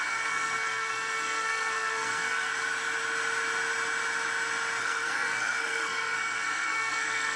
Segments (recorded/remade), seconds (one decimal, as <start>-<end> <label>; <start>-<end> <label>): 0.0-2.5 remade; 2.5-4.8 recorded; 4.8-7.4 remade